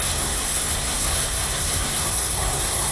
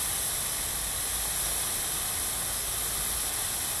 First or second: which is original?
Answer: second